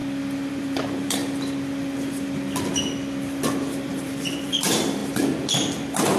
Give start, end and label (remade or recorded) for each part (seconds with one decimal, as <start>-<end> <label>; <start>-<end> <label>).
0.0-0.5 recorded; 0.5-1.2 remade; 1.2-3.8 recorded; 3.8-5.0 remade; 5.0-6.2 recorded